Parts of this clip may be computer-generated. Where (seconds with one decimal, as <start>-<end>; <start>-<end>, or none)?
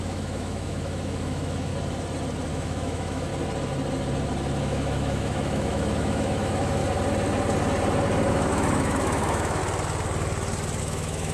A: 0.0-1.7; 2.5-3.3; 4.6-6.8; 8.3-9.6; 10.8-11.3